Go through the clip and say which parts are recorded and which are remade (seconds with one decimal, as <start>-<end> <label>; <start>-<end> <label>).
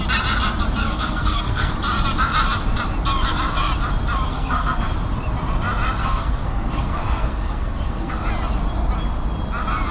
0.0-0.8 recorded; 0.8-1.7 remade; 1.7-4.3 recorded; 4.3-4.9 remade; 4.9-6.0 recorded; 6.0-8.1 remade; 8.1-9.9 recorded